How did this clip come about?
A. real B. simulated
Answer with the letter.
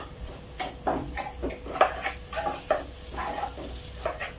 A